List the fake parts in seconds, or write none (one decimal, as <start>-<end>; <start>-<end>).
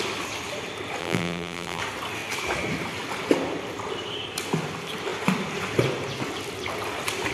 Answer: 1.0-1.8